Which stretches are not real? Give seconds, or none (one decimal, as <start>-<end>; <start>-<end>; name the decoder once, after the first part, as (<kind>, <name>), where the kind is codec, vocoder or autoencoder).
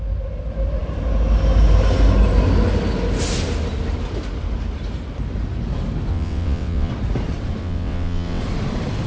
6.1-6.9 (vocoder, WaveNeXt); 7.6-8.4